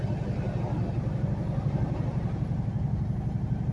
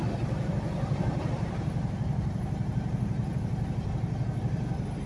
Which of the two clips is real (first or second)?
first